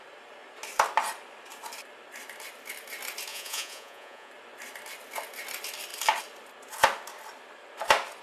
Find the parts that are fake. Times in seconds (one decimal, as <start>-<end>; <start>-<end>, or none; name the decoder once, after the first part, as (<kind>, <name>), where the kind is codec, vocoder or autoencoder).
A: 3.3-4.3 (vocoder, Vocos)